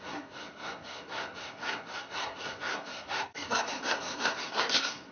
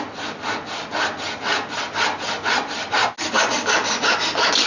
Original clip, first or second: second